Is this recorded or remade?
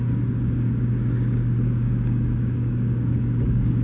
remade